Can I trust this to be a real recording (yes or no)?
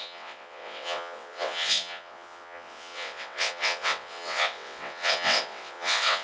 no